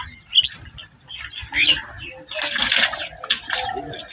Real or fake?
real